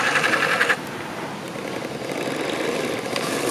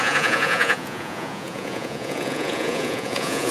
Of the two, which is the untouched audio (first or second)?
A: first